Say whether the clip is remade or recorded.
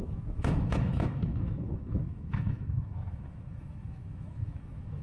remade